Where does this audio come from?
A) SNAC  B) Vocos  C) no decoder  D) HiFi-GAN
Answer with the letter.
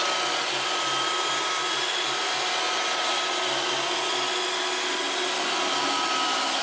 C